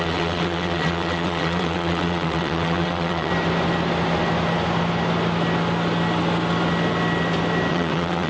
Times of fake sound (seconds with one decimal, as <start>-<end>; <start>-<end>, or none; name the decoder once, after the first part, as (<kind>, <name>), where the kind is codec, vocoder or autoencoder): 0.0-3.3 (vocoder, WaveNeXt); 7.7-8.3